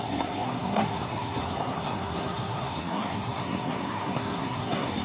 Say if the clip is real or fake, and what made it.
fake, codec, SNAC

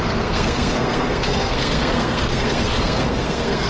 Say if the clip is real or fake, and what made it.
fake, codec, SNAC